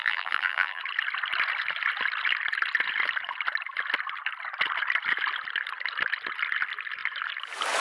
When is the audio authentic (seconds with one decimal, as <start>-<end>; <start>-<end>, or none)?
0.8-7.8